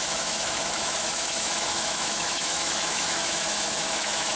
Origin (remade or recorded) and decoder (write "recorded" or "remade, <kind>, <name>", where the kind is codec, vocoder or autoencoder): remade, autoencoder, DAC-VAE